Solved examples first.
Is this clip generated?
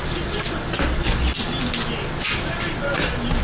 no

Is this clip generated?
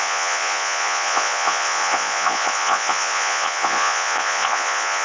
yes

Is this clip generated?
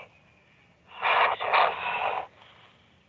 no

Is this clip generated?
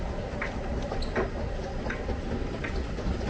no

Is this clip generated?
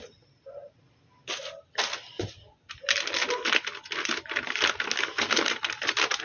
no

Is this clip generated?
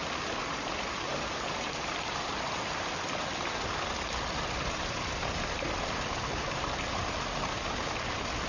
no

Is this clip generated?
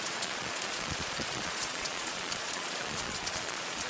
yes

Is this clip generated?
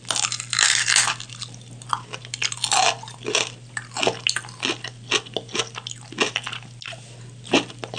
no